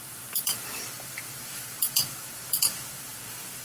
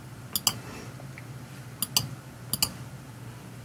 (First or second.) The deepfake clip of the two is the first